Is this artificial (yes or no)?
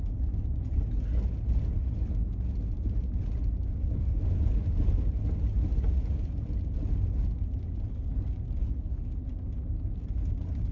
no